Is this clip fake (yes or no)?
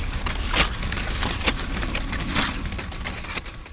no